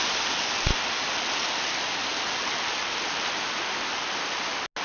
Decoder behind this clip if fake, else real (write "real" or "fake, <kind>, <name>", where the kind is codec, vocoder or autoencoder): real